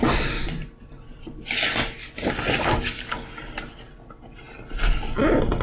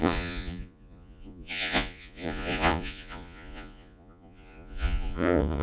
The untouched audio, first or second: first